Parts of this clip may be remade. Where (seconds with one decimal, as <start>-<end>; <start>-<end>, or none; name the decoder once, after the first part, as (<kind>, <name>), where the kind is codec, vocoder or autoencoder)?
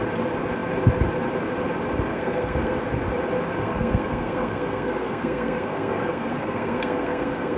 2.1-2.8 (codec, SNAC); 3.6-7.6